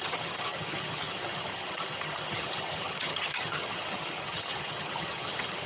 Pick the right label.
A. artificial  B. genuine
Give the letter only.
A